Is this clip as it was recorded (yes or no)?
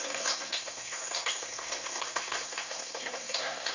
no